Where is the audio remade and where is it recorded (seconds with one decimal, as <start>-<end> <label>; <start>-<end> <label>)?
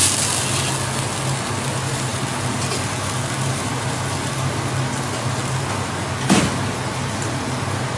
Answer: 0.0-8.0 recorded